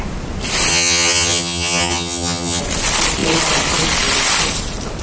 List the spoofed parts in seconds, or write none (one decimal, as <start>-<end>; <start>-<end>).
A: 0.7-2.6